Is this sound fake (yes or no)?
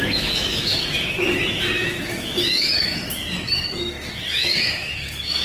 yes